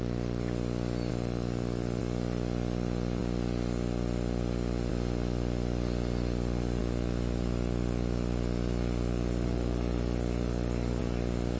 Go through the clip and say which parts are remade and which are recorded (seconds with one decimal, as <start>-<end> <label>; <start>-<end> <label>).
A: 0.0-1.1 recorded; 1.1-2.0 remade; 2.0-6.8 recorded; 6.8-11.0 remade; 11.0-11.6 recorded